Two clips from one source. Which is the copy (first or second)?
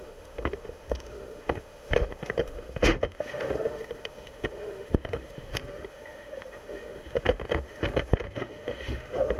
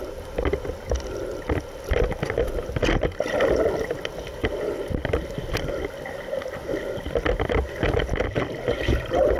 first